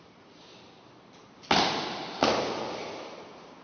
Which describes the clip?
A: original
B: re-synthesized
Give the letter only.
A